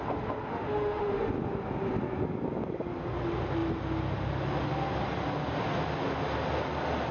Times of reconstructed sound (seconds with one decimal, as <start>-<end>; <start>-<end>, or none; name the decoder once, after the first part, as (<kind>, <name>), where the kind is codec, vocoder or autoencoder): 0.5-1.3 (autoencoder, DAC-VAE)